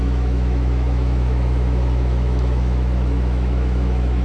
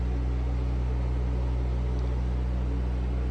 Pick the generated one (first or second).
first